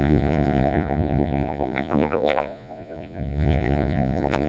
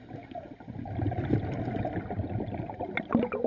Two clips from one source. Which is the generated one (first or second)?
first